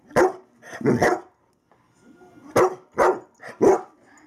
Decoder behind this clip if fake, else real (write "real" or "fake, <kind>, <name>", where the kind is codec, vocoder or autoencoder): real